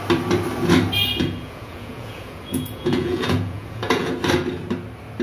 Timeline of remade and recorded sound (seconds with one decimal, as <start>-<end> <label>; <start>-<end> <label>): 0.0-1.0 recorded; 1.0-4.1 remade; 4.1-5.2 recorded